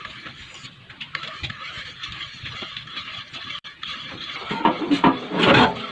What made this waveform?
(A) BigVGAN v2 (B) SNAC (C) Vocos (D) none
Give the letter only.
A